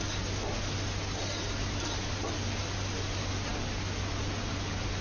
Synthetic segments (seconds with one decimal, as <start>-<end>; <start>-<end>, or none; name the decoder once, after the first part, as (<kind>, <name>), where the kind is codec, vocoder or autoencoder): none